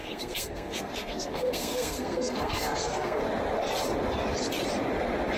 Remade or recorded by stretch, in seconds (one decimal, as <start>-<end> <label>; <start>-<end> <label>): 0.0-3.2 remade; 3.2-5.4 recorded